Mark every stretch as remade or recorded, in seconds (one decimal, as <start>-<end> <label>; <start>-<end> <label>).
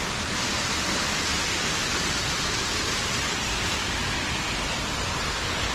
0.0-1.3 recorded; 1.3-2.8 remade; 2.8-5.7 recorded